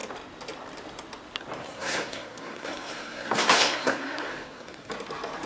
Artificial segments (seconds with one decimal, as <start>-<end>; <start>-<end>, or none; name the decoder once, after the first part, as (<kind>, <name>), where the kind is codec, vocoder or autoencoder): 1.6-4.9 (codec, SNAC)